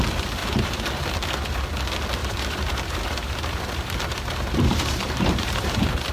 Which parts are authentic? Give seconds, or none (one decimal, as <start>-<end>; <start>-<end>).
0.0-0.4; 0.9-2.2